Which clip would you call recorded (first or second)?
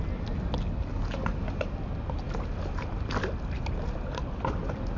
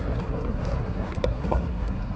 first